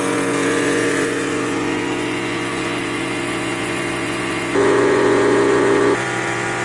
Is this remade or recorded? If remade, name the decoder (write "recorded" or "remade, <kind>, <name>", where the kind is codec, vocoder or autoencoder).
remade, vocoder, Vocos